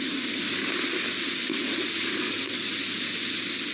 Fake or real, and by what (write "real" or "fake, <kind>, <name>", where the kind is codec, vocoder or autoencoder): real